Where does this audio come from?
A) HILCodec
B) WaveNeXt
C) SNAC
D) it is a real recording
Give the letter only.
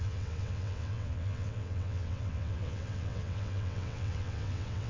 B